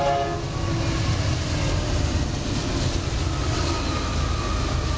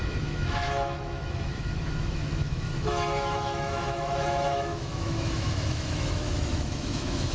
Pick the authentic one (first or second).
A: first